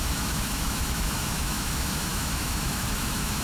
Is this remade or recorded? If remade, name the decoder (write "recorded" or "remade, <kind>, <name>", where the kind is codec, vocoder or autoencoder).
remade, autoencoder, DAC-VAE